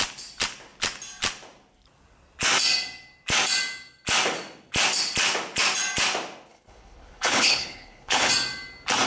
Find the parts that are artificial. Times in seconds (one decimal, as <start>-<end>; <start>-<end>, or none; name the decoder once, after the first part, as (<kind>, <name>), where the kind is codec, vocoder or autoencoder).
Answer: 6.5-8.3 (codec, HILCodec)